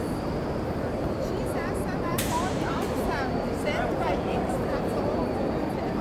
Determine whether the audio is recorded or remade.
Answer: remade